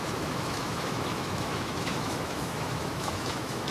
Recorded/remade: remade